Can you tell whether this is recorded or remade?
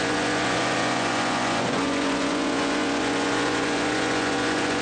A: remade